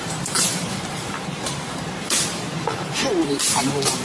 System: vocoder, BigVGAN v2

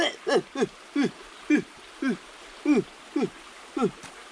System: none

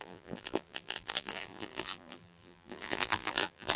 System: vocoder, BigVGAN v2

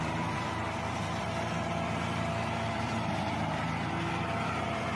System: vocoder, BigVGAN v2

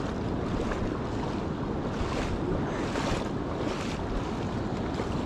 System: none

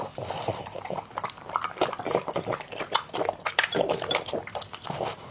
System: vocoder, BigVGAN v2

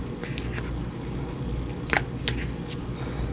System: none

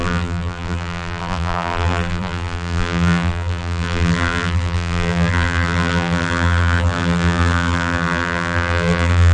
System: vocoder, BigVGAN v2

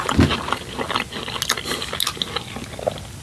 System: none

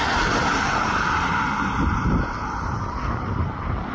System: none